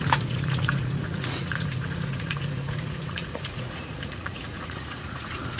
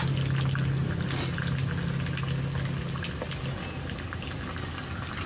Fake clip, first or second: first